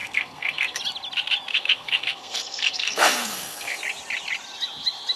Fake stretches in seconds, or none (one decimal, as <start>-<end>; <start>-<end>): 0.0-0.8; 1.5-3.8